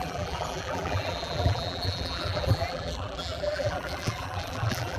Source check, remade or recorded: remade